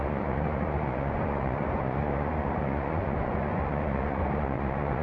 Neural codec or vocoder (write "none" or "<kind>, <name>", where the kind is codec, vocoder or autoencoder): vocoder, Vocos